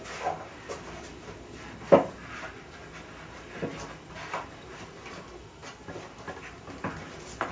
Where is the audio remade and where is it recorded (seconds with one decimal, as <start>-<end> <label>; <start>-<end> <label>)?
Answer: 0.0-7.5 recorded